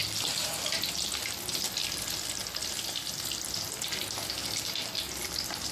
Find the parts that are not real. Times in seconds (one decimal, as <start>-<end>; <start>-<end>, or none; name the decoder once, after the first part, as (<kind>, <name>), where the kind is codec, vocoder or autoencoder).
1.8-3.7 (vocoder, BigVGAN v2); 4.4-5.7

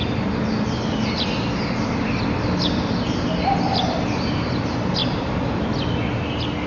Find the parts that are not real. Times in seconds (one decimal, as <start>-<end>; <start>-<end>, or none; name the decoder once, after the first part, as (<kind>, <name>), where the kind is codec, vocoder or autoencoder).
5.0-5.6 (vocoder, BigVGAN v2)

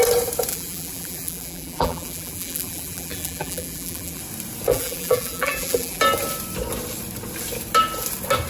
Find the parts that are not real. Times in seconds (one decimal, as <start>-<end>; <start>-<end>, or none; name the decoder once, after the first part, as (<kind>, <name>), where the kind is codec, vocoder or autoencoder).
0.5-4.2 (vocoder, BigVGAN v2); 4.7-6.0

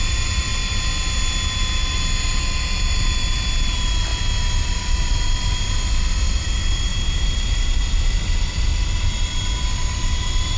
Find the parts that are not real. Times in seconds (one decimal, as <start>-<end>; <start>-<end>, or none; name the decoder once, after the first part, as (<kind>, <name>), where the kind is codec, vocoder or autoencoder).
0.0-0.5 (vocoder, BigVGAN v2); 2.9-4.1; 4.6-10.6

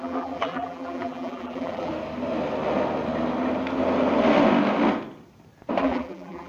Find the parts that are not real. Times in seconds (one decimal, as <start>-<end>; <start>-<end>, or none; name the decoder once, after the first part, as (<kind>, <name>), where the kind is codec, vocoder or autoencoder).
0.0-1.9 (vocoder, BigVGAN v2); 5.8-6.5

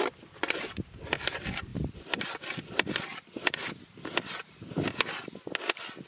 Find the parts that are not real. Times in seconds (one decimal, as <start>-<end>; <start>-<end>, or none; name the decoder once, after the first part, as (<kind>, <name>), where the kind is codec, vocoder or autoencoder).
1.7-2.2 (vocoder, BigVGAN v2); 3.1-4.3

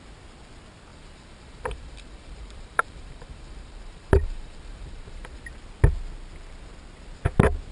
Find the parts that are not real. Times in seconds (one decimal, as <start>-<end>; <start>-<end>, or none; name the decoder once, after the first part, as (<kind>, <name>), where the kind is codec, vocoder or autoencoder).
0.9-5.4 (vocoder, BigVGAN v2)

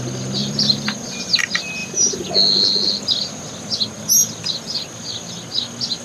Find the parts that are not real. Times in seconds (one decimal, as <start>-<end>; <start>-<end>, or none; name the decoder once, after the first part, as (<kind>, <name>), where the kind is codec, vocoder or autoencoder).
0.4-1.4 (vocoder, BigVGAN v2); 1.8-2.3